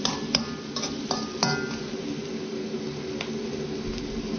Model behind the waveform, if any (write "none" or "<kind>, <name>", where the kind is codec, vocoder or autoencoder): none